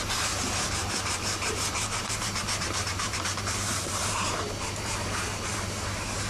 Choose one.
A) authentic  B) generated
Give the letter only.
B